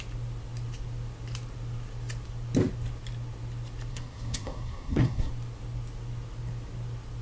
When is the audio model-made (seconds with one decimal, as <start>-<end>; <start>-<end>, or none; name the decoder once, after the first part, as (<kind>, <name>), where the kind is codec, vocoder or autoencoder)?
3.9-5.3 (codec, SNAC)